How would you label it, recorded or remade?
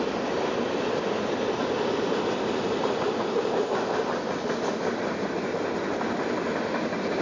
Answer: recorded